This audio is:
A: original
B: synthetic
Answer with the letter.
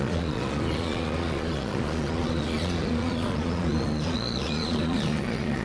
B